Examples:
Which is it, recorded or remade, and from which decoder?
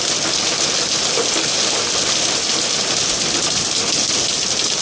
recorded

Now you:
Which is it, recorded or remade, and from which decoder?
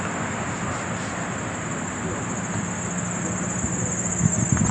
recorded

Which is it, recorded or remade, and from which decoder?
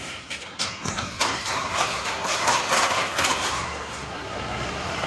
remade, codec, SNAC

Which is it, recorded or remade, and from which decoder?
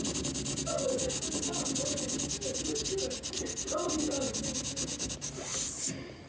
recorded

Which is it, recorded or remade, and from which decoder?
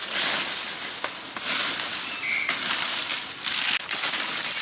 recorded